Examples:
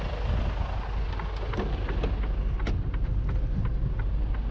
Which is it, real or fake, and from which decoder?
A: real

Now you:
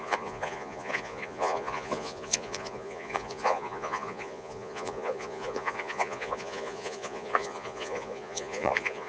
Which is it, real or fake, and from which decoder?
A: fake, vocoder, Vocos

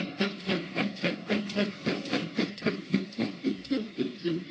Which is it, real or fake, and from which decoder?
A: fake, codec, SNAC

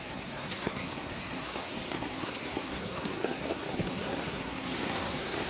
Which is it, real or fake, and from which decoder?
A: fake, codec, SNAC